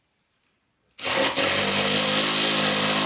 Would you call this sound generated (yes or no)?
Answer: no